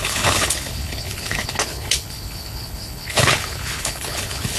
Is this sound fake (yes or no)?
yes